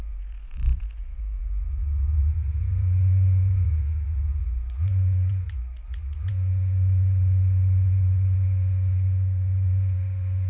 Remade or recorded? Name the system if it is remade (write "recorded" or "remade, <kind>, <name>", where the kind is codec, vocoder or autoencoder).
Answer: remade, vocoder, Vocos